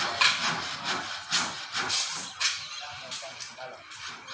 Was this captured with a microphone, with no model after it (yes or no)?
yes